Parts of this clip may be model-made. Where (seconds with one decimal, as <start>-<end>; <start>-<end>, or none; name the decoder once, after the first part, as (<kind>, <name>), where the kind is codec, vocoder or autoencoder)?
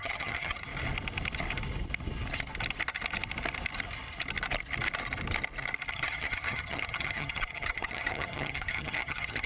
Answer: 0.0-0.7 (vocoder, HiFi-GAN); 5.9-9.5